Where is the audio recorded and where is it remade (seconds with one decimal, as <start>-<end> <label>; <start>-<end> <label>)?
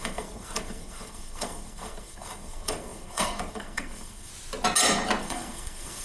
0.0-4.3 remade; 4.3-5.2 recorded; 5.2-6.0 remade